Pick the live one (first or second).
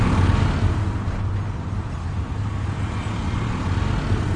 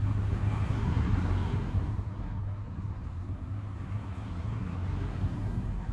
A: first